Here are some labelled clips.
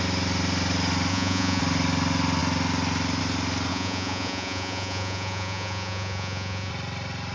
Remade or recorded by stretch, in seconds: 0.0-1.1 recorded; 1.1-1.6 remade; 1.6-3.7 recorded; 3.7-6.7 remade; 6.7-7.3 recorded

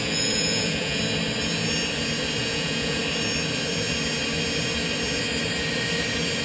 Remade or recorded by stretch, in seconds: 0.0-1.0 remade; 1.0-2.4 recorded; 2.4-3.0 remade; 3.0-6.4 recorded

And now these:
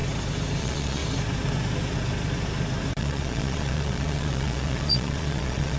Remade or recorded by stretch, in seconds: 0.0-0.6 recorded; 0.6-1.0 remade; 1.0-3.0 recorded; 3.0-5.8 remade

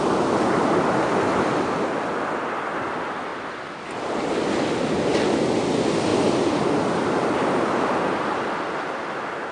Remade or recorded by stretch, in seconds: 0.0-9.5 recorded

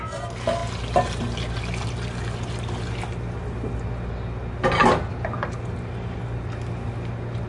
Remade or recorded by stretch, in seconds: 0.0-7.5 recorded

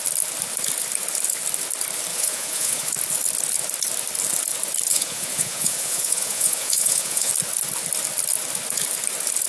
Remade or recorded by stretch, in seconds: 0.0-2.1 recorded; 2.1-2.9 remade; 2.9-4.9 recorded; 4.9-7.3 remade; 7.3-9.5 recorded